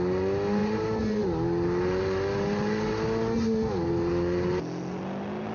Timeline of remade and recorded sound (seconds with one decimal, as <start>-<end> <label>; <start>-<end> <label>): 0.0-0.6 recorded; 0.6-1.2 remade; 1.2-5.5 recorded